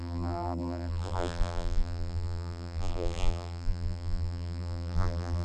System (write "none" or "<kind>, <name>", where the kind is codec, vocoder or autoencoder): vocoder, BigVGAN v2